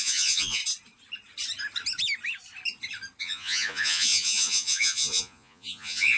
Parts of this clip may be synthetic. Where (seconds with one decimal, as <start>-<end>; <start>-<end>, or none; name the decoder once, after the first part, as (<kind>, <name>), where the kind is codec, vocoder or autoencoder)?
0.0-0.6 (vocoder, Vocos); 3.2-6.2